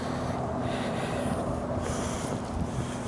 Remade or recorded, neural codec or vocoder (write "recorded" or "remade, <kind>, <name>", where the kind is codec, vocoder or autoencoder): recorded